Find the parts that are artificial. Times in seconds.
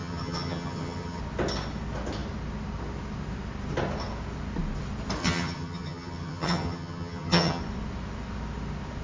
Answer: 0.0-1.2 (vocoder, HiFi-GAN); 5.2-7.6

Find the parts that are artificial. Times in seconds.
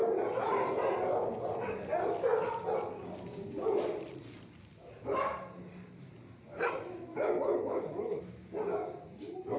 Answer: 7.1-8.2 (autoencoder, DAC-VAE)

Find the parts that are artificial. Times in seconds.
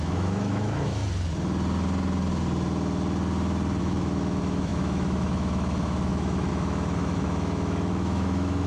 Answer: 0.0-1.0 (autoencoder, DAC-VAE); 3.8-8.7